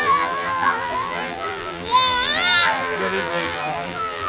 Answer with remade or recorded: remade